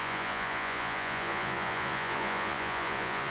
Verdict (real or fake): fake